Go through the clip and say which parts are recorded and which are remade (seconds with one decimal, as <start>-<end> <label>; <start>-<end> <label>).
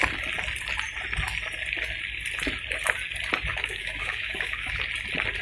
0.0-3.5 recorded; 3.5-4.8 remade; 4.8-5.4 recorded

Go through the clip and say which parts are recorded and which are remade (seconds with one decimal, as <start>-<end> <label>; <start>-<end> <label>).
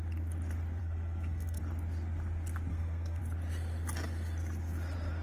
0.0-0.8 recorded; 0.8-1.6 remade; 1.6-2.7 recorded; 2.7-3.2 remade; 3.2-5.2 recorded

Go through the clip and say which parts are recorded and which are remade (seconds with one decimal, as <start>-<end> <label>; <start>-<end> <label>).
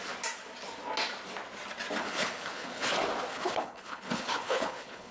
0.0-2.0 recorded; 2.0-2.9 remade; 2.9-3.3 recorded; 3.3-5.1 remade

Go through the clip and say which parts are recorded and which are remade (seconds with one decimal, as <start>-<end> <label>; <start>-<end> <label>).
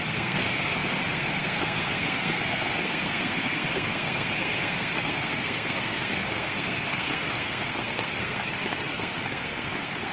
0.0-10.1 remade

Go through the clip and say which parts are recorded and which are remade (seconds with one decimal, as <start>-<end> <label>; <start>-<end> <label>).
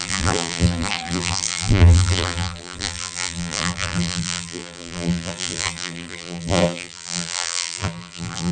0.0-8.5 remade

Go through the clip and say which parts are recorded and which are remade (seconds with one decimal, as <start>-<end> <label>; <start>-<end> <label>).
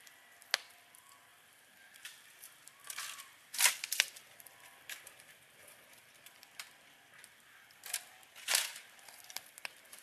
0.0-1.3 recorded; 1.3-5.5 remade; 5.5-10.0 recorded